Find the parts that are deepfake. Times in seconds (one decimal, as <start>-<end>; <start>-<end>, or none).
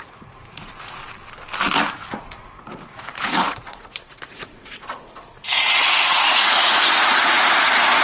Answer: 0.0-1.0; 2.1-8.0